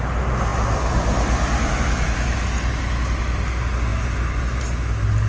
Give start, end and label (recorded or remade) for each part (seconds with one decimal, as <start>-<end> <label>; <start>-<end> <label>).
0.0-5.3 recorded